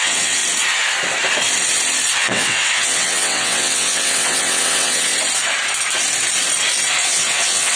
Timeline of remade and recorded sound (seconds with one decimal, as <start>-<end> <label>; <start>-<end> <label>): 0.0-0.4 remade; 0.4-2.2 recorded; 2.2-5.1 remade; 5.1-7.0 recorded; 7.0-7.8 remade